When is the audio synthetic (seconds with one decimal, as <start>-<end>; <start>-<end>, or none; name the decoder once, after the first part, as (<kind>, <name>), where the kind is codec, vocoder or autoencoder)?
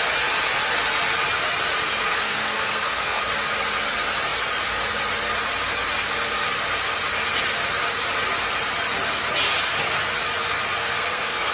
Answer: 2.1-3.2 (codec, SNAC); 10.8-11.5